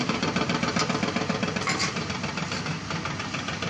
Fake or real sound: real